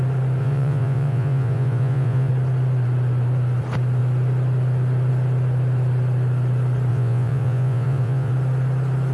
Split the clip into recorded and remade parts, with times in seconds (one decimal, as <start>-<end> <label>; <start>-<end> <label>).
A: 0.0-0.4 recorded; 0.4-2.3 remade; 2.3-6.9 recorded; 6.9-8.3 remade; 8.3-9.1 recorded

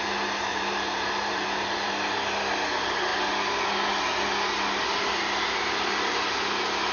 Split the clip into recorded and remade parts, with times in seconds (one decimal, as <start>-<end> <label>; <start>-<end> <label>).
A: 0.0-0.5 recorded; 0.5-1.9 remade; 1.9-6.9 recorded